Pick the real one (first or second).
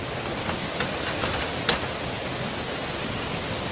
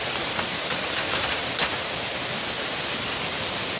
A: first